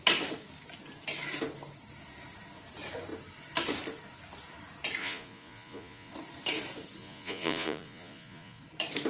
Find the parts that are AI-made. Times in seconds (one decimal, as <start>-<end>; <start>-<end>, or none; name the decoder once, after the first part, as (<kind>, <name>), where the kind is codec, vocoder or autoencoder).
5.0-6.1 (vocoder, Vocos); 7.0-8.6